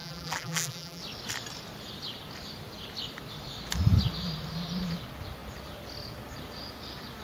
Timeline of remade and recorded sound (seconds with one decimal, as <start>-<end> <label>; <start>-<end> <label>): 0.0-1.0 remade; 1.0-7.2 recorded